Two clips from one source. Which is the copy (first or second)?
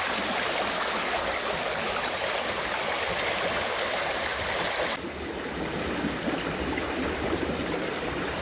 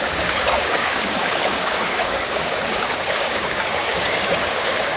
second